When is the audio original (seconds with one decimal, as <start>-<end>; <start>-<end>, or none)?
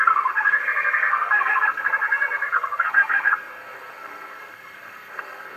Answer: none